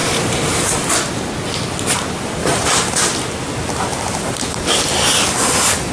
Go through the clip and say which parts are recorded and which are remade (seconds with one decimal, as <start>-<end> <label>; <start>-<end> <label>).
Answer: 0.0-0.9 remade; 0.9-2.4 recorded; 2.4-3.0 remade; 3.0-3.9 recorded; 3.9-4.8 remade; 4.8-5.9 recorded